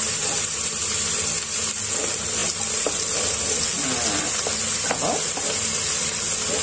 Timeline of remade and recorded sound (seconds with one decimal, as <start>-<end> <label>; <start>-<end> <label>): 0.0-6.6 recorded